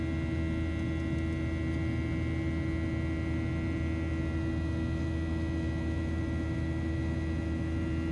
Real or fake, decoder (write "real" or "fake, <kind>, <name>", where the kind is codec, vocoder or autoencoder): real